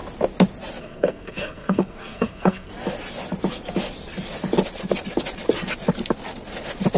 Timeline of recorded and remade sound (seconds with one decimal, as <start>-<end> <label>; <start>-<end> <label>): 0.0-0.8 recorded; 0.8-2.7 remade; 2.7-7.0 recorded